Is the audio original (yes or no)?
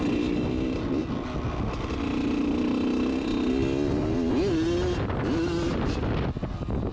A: yes